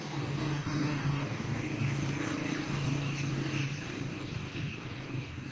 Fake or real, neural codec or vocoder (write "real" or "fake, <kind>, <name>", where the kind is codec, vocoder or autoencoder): fake, codec, DAC